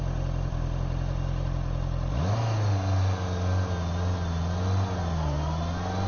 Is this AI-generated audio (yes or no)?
no